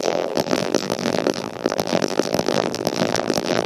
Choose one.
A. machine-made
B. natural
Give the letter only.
A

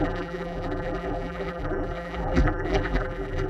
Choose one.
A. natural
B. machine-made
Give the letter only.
B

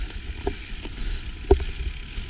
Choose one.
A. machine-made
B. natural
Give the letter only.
B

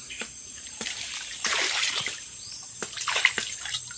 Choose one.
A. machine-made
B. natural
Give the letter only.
A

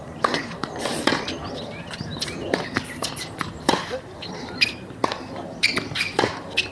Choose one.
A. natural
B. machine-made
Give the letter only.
B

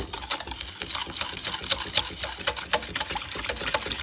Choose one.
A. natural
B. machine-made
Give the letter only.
A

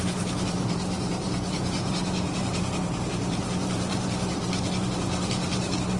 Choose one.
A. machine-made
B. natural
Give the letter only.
A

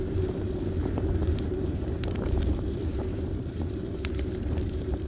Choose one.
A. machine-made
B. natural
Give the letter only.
A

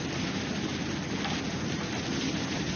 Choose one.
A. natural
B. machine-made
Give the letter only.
A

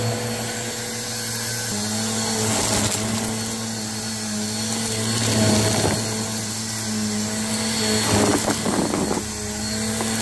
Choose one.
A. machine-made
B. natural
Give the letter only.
B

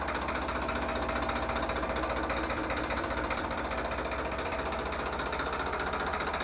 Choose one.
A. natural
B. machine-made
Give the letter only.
B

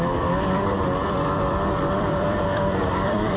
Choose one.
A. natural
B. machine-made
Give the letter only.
B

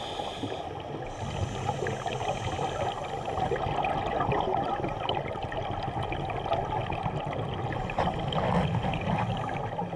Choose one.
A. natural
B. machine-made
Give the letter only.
A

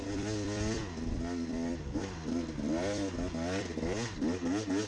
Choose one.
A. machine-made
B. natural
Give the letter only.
A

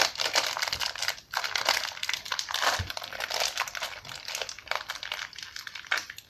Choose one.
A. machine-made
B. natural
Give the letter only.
A